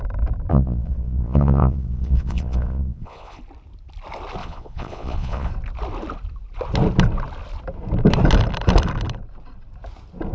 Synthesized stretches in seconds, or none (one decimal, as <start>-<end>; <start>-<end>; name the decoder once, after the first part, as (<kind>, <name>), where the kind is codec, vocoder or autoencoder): 0.5-3.4 (vocoder, Vocos); 4.4-5.5